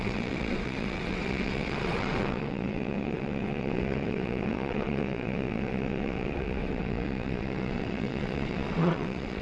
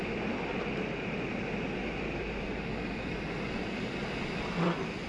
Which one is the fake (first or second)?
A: first